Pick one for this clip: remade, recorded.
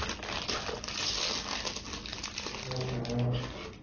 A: recorded